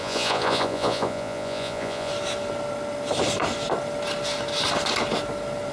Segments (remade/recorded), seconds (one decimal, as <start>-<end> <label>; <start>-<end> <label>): 0.0-2.1 remade; 2.1-5.7 recorded